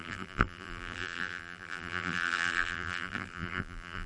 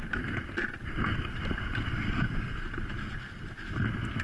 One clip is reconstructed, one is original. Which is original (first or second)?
second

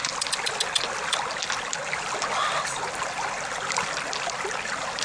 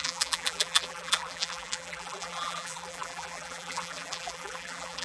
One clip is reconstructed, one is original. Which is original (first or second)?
first